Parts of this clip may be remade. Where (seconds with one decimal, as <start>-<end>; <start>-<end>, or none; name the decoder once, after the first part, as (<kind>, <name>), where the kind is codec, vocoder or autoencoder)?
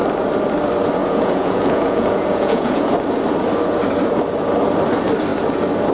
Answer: 1.0-2.8 (vocoder, Vocos)